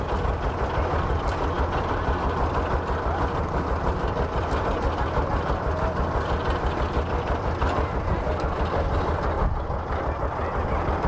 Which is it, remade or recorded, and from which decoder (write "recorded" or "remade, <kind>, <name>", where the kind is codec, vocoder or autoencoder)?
remade, vocoder, BigVGAN v2